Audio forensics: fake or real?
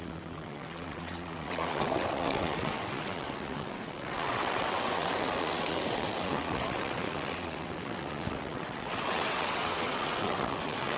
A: fake